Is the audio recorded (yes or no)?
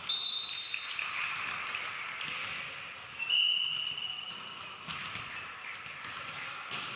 yes